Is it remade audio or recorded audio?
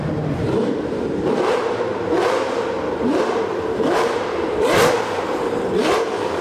remade